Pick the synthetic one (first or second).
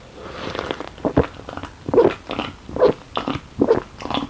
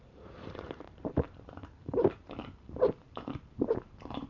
second